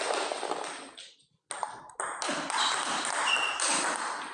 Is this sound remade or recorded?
recorded